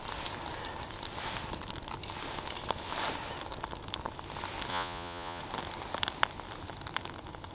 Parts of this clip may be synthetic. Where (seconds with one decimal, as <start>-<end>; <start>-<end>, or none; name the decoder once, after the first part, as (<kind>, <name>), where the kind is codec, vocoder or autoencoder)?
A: 4.7-5.4 (vocoder, Vocos)